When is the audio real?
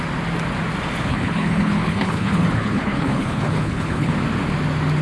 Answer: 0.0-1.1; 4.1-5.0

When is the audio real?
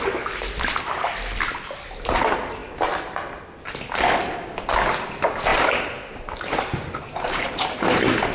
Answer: 0.0-8.3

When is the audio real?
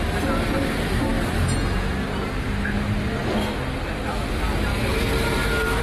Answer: 0.0-5.8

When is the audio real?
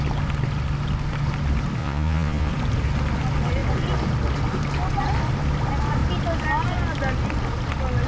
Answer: 0.0-1.8; 2.5-8.1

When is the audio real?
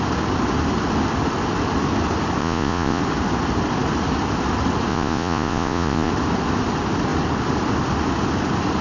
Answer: 0.0-2.4; 3.0-4.9; 6.1-8.8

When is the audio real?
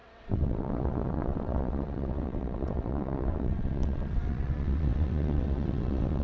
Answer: none